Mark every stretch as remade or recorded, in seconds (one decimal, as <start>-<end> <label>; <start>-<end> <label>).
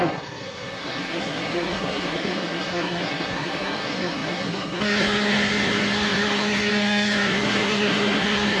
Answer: 0.0-8.6 remade